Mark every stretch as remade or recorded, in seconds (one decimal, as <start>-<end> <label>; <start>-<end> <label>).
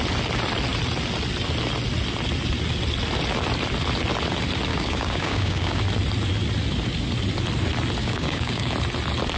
0.0-4.7 recorded; 4.7-5.8 remade; 5.8-8.0 recorded; 8.0-8.7 remade; 8.7-9.4 recorded